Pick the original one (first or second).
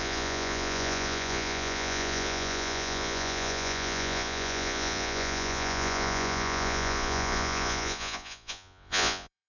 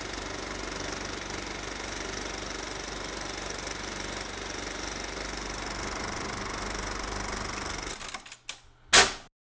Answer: second